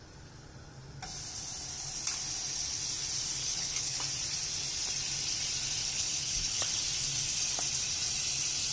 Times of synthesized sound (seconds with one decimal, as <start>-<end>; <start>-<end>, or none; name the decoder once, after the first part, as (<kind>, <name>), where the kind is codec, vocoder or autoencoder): 3.4-4.0 (codec, HILCodec); 5.8-6.7